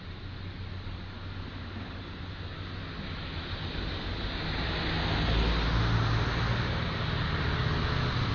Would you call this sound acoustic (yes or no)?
yes